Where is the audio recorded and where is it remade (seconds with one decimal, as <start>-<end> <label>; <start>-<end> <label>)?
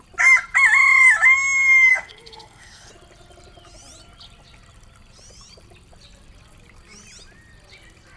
0.0-1.9 recorded; 1.9-2.9 remade; 2.9-8.2 recorded